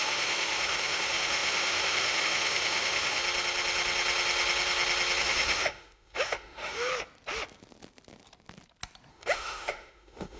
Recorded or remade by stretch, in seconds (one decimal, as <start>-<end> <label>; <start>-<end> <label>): 0.0-3.2 remade; 3.2-5.2 recorded; 5.2-6.9 remade; 6.9-9.1 recorded; 9.1-10.4 remade